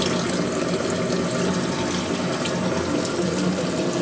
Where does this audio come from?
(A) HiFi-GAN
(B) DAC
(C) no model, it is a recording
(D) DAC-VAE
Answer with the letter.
C